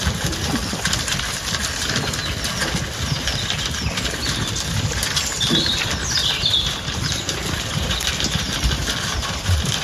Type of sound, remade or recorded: recorded